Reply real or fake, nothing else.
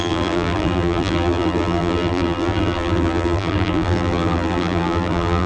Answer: fake